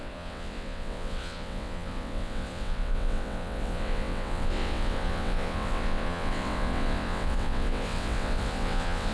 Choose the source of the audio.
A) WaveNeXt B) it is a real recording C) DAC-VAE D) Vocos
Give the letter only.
A